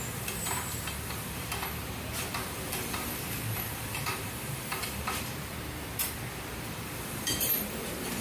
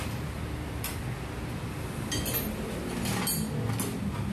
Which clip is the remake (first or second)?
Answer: first